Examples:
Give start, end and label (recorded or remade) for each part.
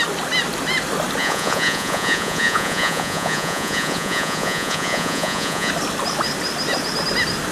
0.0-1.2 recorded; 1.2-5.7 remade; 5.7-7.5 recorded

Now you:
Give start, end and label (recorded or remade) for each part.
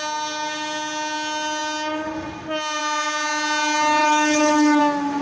0.0-4.0 recorded; 4.0-4.8 remade; 4.8-5.2 recorded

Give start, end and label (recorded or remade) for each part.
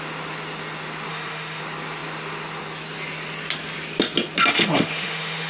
0.0-1.1 recorded; 1.1-1.6 remade; 1.6-4.5 recorded; 4.5-5.5 remade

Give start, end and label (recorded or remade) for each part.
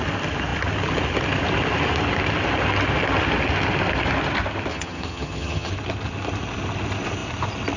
0.0-4.7 recorded; 4.7-5.7 remade; 5.7-7.8 recorded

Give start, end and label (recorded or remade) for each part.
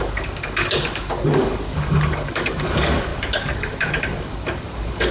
0.0-5.1 remade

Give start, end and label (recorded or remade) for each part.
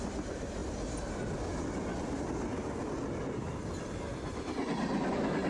0.0-5.5 recorded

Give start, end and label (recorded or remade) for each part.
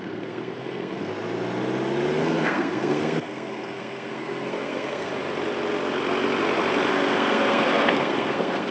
0.0-1.1 remade; 1.1-2.2 recorded; 2.2-5.1 remade; 5.1-6.9 recorded; 6.9-8.7 remade